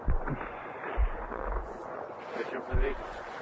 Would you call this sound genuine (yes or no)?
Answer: no